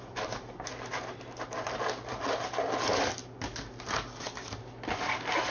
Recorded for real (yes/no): yes